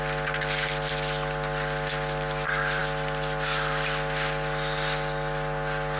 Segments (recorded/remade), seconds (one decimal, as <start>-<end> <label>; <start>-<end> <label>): 0.0-6.0 recorded